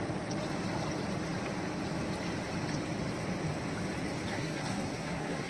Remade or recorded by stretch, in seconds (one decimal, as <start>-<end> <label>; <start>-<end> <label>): 0.0-4.3 recorded; 4.3-5.5 remade